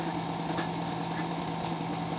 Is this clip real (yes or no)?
yes